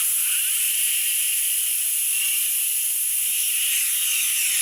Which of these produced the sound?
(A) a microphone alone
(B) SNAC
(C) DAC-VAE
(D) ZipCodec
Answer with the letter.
A